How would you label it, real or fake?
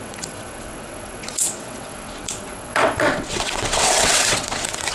fake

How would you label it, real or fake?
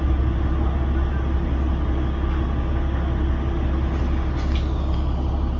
real